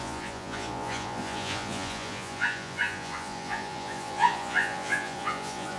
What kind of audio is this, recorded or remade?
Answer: remade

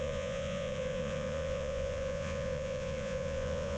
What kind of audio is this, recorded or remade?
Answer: remade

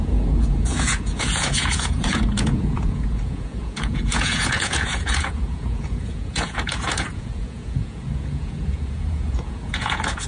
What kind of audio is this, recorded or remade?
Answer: remade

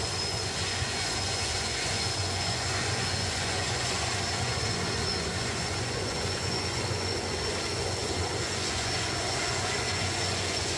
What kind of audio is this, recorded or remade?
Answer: remade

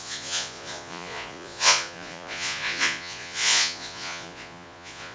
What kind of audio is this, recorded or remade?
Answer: remade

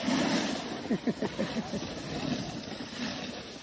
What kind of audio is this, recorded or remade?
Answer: recorded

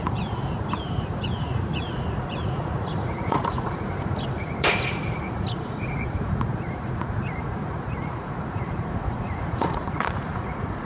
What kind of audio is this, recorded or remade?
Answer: remade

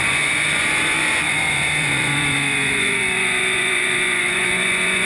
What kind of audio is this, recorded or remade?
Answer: remade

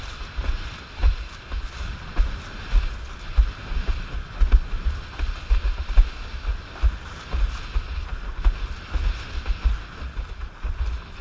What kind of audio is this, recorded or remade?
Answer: recorded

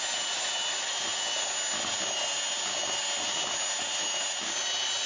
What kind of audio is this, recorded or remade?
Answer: recorded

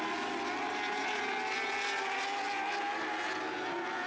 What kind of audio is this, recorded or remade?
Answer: recorded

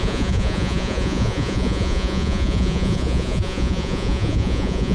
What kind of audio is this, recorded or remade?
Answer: remade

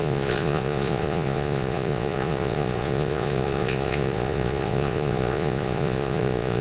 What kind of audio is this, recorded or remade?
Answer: remade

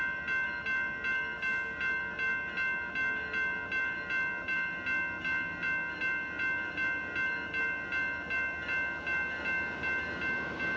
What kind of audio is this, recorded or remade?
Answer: recorded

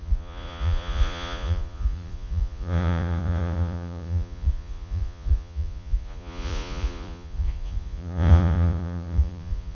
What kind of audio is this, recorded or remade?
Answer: remade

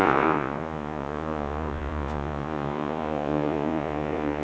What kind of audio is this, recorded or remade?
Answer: remade